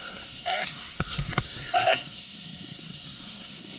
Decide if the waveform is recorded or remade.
remade